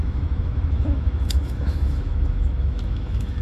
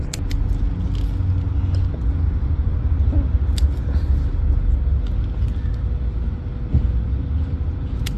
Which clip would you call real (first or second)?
second